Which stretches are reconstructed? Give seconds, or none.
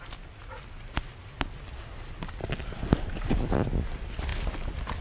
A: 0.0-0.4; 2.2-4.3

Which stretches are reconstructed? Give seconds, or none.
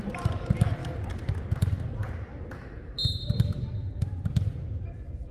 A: none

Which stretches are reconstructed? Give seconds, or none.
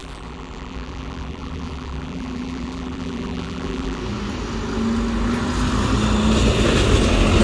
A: 0.0-4.0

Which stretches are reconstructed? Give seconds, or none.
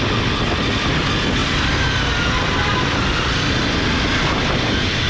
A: 1.4-4.5